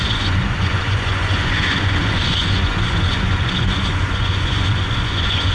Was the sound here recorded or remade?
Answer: remade